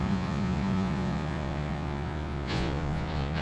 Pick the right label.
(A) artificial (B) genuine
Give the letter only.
A